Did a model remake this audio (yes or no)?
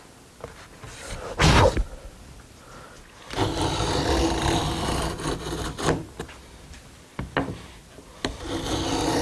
no